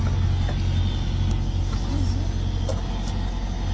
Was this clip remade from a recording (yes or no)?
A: no